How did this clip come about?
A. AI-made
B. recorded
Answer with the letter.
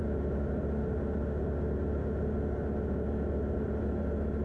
B